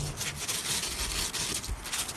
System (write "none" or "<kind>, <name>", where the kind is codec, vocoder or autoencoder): none